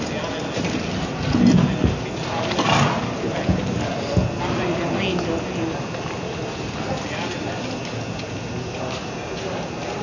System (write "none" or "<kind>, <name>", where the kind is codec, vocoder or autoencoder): none